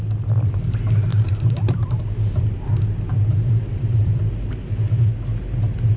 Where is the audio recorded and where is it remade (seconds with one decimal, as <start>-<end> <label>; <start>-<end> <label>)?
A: 0.0-1.1 recorded; 1.1-2.0 remade; 2.0-3.3 recorded; 3.3-4.2 remade; 4.2-6.0 recorded